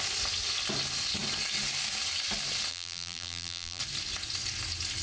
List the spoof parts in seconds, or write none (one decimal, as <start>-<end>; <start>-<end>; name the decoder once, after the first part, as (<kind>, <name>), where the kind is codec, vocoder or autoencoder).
2.7-3.8 (vocoder, BigVGAN v2)